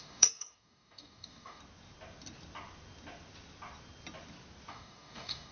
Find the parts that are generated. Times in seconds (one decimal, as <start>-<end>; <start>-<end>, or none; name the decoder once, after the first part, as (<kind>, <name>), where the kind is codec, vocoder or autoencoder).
0.0-1.6 (codec, DAC); 4.7-5.5